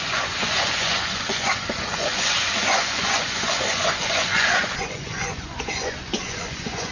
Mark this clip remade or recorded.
remade